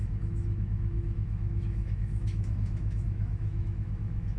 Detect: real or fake fake